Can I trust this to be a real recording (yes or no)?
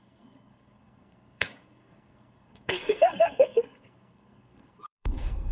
no